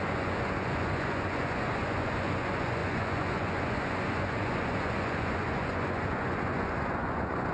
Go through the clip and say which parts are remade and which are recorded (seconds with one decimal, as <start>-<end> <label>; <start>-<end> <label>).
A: 0.0-7.5 remade